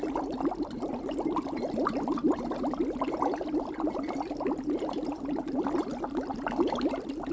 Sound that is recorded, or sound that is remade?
recorded